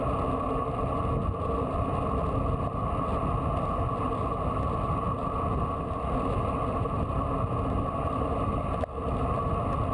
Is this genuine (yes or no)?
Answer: yes